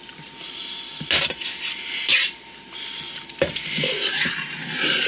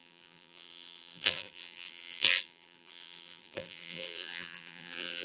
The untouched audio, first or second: first